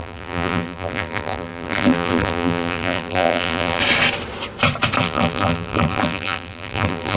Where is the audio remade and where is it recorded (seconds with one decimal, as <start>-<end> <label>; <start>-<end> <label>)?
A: 0.0-3.8 remade; 3.8-5.0 recorded; 5.0-7.2 remade